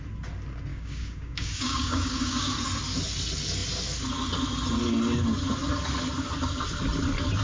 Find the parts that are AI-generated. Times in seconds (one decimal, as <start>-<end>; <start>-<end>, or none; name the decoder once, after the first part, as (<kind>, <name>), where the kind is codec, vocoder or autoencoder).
0.7-2.5 (codec, DAC)